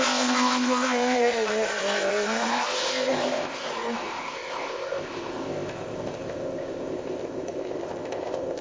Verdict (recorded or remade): remade